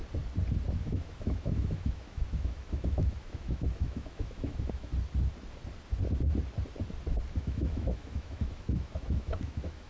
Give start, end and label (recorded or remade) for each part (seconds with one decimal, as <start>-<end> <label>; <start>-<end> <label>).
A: 0.0-0.7 recorded; 0.7-4.9 remade; 4.9-7.4 recorded; 7.4-9.9 remade